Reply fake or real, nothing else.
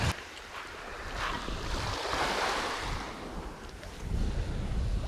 real